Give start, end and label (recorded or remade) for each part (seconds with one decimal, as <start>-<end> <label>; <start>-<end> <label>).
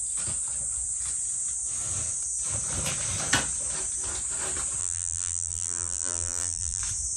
0.0-4.8 recorded; 4.8-6.8 remade; 6.8-7.2 recorded